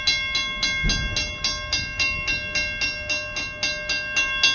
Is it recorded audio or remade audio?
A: recorded